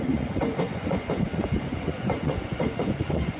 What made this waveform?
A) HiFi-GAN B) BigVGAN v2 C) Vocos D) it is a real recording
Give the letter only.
C